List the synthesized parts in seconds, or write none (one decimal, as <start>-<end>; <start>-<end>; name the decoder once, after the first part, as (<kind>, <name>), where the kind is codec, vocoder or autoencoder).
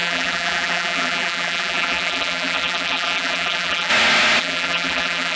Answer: 0.0-3.9 (vocoder, BigVGAN v2); 4.4-5.4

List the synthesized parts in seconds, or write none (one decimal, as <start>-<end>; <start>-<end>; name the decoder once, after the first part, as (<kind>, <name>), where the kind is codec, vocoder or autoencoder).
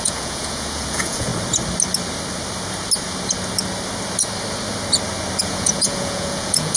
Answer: 0.0-1.3 (vocoder, Vocos); 5.4-6.8